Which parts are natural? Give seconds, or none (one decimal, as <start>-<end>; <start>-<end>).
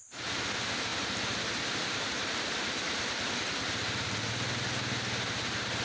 0.0-5.8